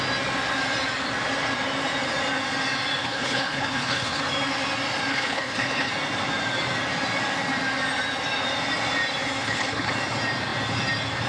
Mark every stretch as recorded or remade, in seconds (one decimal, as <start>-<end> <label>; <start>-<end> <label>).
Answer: 0.0-3.0 recorded; 3.0-4.2 remade; 4.2-5.1 recorded; 5.1-5.9 remade; 5.9-9.4 recorded; 9.4-9.9 remade; 9.9-11.3 recorded